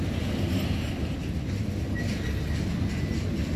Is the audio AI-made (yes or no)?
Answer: no